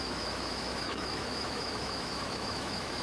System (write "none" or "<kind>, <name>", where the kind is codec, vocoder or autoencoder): autoencoder, DAC-VAE